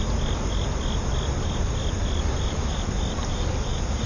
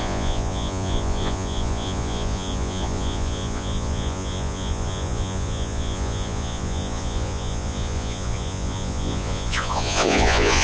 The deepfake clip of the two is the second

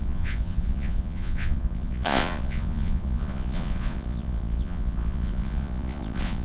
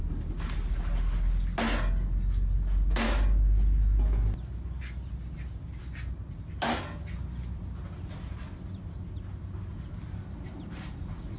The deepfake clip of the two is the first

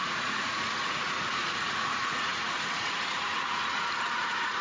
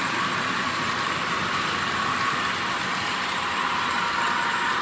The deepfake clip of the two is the first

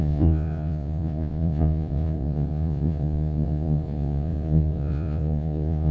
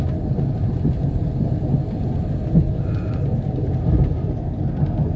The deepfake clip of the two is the first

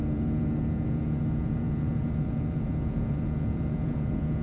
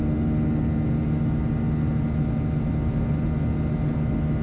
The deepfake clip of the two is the first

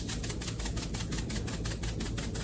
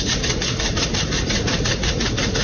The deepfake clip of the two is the second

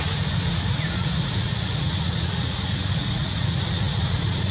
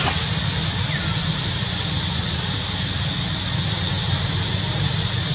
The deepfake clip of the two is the first